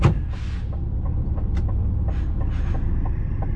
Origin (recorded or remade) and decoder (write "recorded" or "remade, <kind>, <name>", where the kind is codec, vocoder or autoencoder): recorded